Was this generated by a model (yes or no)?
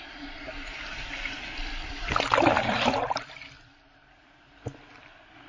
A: yes